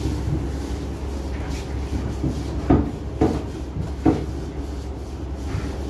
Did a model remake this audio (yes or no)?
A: no